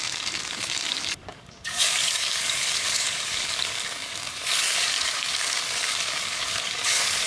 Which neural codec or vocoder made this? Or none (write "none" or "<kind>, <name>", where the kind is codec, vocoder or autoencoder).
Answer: codec, DAC